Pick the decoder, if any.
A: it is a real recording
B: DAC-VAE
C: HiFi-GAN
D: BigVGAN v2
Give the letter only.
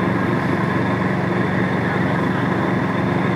A